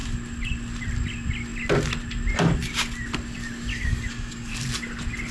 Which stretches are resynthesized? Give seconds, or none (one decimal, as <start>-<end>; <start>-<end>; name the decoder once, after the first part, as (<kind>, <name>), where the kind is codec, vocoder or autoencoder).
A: 3.7-4.5 (codec, DAC)